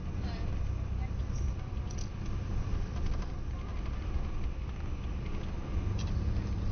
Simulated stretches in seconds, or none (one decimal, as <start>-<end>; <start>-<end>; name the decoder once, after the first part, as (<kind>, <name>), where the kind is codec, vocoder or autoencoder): none